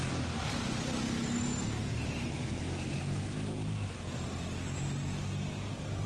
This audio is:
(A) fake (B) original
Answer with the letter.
B